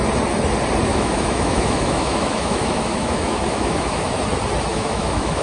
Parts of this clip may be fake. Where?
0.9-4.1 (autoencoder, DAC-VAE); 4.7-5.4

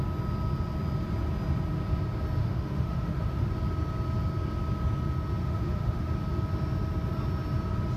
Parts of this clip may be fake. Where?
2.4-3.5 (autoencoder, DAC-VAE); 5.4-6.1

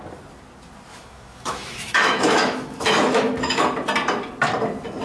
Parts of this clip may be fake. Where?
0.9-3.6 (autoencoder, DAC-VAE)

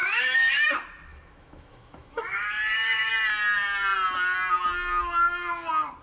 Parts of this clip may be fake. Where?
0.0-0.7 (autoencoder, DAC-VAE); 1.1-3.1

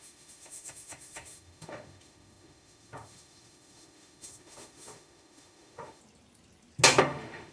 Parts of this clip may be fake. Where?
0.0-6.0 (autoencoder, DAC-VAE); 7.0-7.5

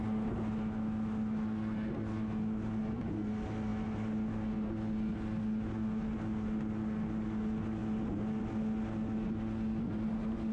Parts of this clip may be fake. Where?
none

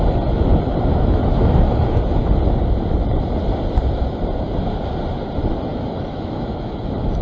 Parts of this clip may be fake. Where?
0.9-2.0 (autoencoder, DAC-VAE); 5.7-6.8

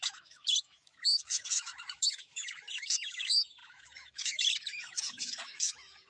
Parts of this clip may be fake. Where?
0.0-6.1 (autoencoder, DAC-VAE)